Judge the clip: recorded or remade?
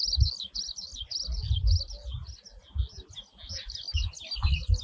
recorded